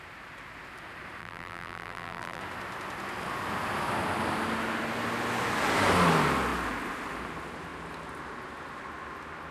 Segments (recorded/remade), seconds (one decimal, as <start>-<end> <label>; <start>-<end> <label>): 0.0-1.2 recorded; 1.2-2.4 remade; 2.4-9.5 recorded